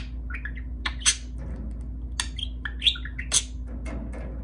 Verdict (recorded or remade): recorded